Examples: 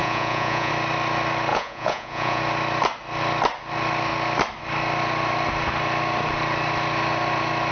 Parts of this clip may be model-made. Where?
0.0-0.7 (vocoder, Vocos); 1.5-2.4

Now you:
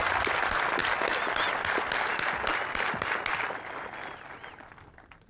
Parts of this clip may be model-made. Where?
none

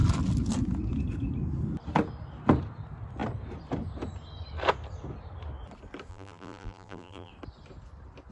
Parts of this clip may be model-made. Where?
6.1-7.3 (vocoder, BigVGAN v2)

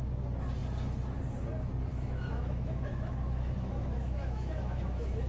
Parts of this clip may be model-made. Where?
1.9-5.3 (autoencoder, DAC-VAE)

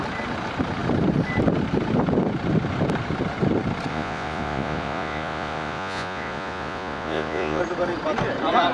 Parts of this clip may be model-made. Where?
3.9-7.6 (vocoder, Vocos)

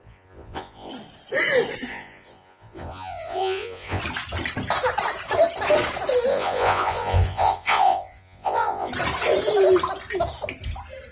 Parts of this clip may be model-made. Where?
0.0-0.9 (vocoder, Vocos); 1.9-4.0; 6.3-8.9

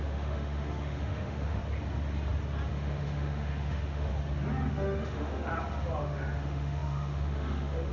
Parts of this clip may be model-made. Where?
0.0-1.6 (autoencoder, DAC-VAE); 2.7-4.1; 4.7-5.5; 6.0-7.9